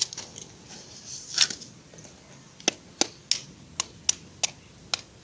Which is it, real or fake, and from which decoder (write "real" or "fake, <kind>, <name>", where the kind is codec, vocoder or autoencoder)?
real